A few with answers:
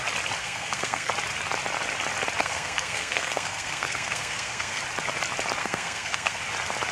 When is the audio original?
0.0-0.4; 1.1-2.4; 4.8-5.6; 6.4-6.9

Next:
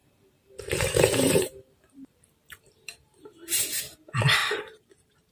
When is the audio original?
3.2-4.4

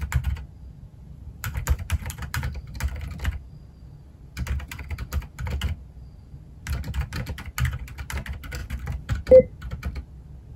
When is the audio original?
0.0-0.9; 2.8-8.6; 9.1-10.6

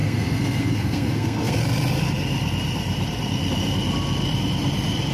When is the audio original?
1.6-5.1

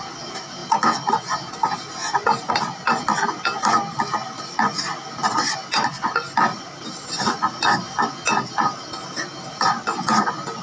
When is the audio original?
0.0-10.6

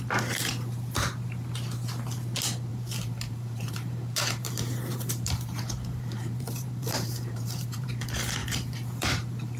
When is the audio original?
0.0-2.7; 7.9-8.4

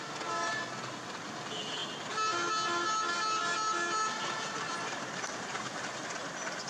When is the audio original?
0.0-6.7

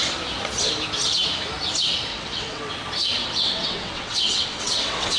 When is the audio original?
0.0-2.1; 2.7-3.2